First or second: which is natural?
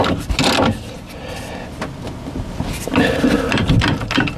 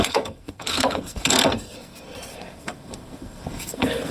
first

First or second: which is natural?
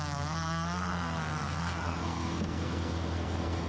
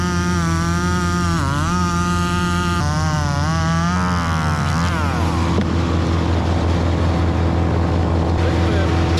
second